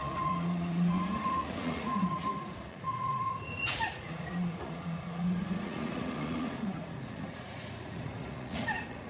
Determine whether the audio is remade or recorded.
remade